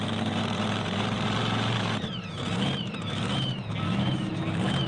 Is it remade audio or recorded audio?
remade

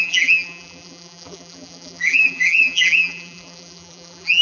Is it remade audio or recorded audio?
remade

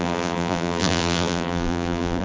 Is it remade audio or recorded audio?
remade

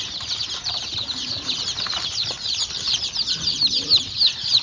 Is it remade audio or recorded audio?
remade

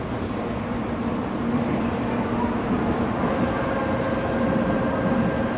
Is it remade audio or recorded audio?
recorded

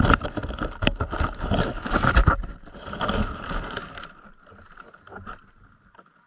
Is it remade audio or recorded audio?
recorded